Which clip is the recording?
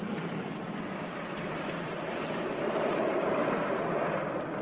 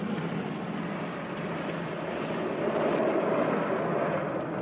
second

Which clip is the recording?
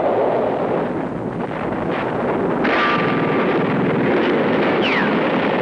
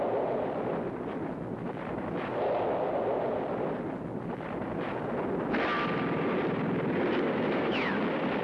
first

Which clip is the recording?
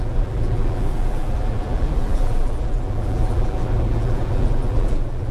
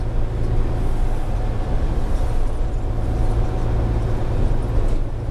second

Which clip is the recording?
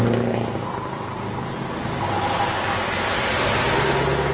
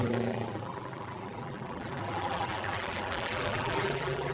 first